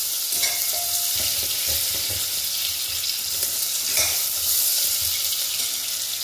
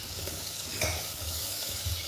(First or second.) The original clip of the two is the first